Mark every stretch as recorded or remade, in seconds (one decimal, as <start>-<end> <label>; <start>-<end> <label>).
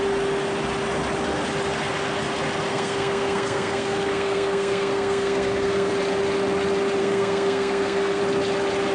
0.0-2.7 recorded; 2.7-5.9 remade; 5.9-7.0 recorded; 7.0-8.2 remade; 8.2-8.9 recorded